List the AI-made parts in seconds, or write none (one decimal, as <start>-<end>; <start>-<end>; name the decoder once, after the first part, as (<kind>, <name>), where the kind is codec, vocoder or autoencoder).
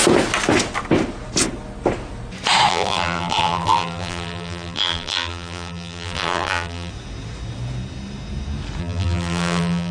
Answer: 2.7-6.9 (vocoder, BigVGAN v2); 8.8-9.9